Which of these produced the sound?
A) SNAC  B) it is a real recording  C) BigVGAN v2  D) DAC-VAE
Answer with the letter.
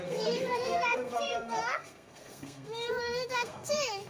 A